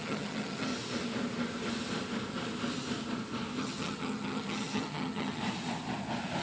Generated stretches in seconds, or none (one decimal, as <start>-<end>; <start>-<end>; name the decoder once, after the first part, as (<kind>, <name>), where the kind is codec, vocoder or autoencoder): 0.0-0.7 (vocoder, HiFi-GAN); 3.6-5.4